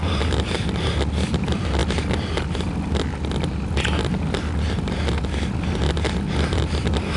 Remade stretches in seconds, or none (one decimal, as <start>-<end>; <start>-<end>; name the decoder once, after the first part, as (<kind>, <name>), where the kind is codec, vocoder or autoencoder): 0.0-1.8 (vocoder, BigVGAN v2); 6.1-7.2